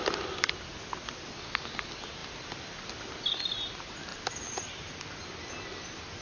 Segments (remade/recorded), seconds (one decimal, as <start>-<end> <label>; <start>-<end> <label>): 0.0-6.2 recorded